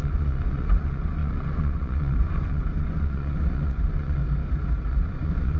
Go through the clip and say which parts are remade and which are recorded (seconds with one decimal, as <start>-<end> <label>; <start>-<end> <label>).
0.0-4.2 remade; 4.2-4.9 recorded; 4.9-5.6 remade